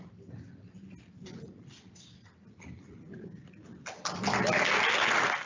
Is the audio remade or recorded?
recorded